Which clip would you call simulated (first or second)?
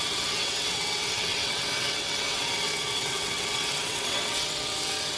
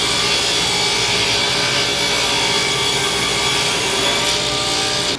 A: first